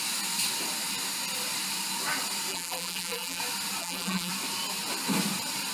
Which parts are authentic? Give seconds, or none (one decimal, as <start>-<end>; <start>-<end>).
0.0-2.5; 3.4-3.8; 4.3-5.7